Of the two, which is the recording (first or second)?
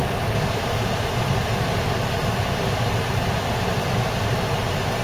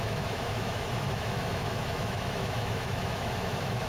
first